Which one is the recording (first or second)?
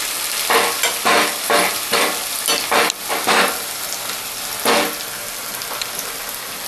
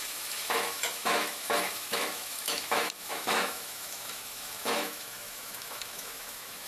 first